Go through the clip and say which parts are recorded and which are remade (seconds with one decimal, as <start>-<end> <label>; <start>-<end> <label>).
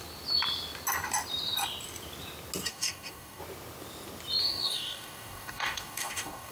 0.0-2.7 recorded; 2.7-3.4 remade; 3.4-4.4 recorded; 4.4-6.5 remade